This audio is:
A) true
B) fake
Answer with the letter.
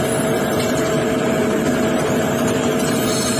B